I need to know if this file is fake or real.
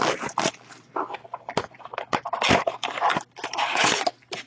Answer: real